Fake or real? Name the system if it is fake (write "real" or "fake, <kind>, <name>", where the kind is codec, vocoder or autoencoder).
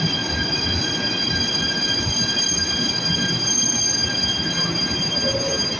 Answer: real